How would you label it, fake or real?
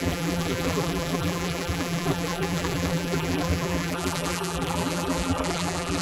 fake